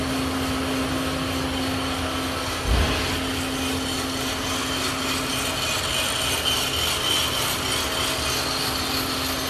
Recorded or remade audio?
recorded